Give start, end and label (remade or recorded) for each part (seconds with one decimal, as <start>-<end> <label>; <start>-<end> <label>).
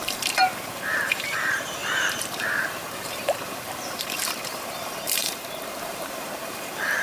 0.0-7.0 remade